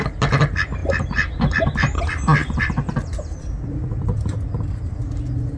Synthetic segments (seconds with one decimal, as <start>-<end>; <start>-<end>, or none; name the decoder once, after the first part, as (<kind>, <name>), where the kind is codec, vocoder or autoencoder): none